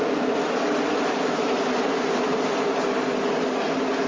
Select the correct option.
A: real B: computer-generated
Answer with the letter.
A